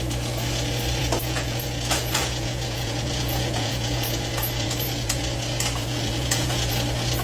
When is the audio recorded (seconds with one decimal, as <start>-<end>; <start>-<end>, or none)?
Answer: 0.0-1.0; 5.2-5.8; 6.7-7.2